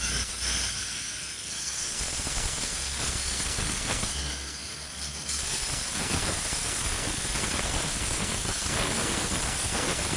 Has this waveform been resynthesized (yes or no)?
yes